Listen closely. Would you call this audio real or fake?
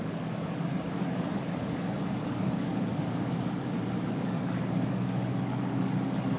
fake